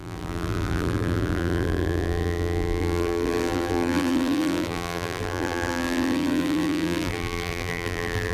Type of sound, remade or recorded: remade